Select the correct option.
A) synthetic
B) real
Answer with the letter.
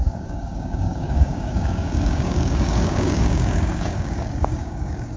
A